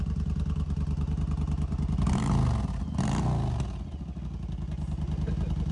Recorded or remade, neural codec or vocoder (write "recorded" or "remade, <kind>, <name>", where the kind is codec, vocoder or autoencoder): recorded